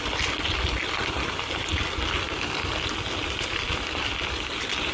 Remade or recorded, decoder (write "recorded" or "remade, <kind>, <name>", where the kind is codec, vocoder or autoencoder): recorded